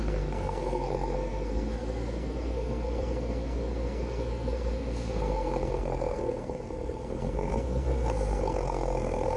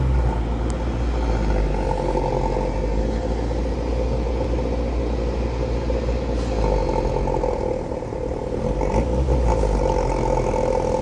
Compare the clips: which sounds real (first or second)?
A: second